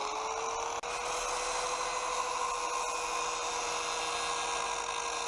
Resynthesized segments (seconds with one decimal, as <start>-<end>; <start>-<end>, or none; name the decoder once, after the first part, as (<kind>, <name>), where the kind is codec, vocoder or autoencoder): none